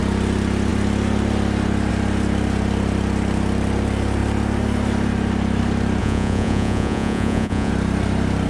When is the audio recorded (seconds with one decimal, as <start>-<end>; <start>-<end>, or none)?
0.0-6.0; 7.7-8.5

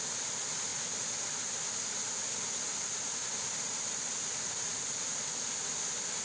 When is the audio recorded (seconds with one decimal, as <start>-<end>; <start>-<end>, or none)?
0.0-6.2

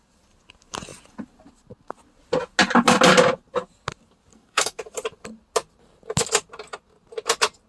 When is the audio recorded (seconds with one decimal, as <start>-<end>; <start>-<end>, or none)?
0.0-4.3; 4.8-7.7

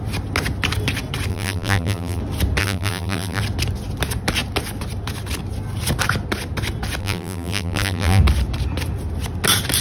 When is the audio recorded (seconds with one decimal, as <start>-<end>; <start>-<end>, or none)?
0.0-1.3; 2.2-2.6; 3.4-7.0; 8.2-9.8

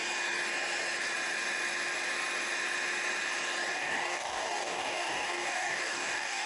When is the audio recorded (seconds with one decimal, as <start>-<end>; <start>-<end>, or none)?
0.0-3.7

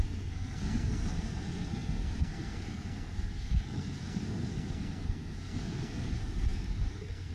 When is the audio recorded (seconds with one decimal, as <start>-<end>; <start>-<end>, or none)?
none

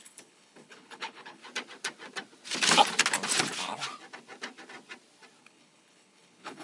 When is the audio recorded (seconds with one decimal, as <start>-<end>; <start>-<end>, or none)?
1.4-5.4

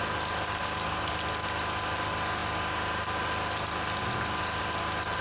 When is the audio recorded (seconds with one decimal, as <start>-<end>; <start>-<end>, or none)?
0.0-5.2